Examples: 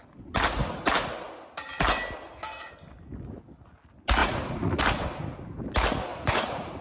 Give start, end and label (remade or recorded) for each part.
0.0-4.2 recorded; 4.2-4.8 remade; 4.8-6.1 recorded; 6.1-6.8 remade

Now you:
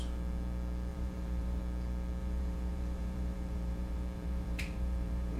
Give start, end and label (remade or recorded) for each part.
0.0-0.9 recorded; 0.9-1.6 remade; 1.6-2.2 recorded; 2.2-5.4 remade

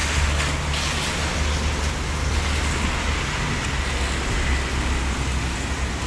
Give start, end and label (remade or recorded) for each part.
0.0-6.1 recorded